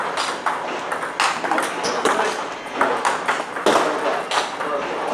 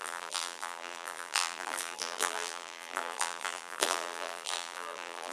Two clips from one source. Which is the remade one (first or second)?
second